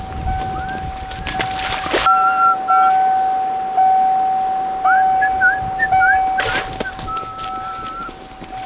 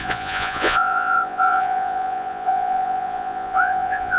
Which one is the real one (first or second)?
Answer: first